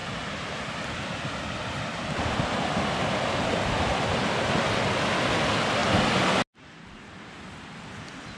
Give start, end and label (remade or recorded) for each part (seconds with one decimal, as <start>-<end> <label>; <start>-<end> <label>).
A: 0.0-8.4 recorded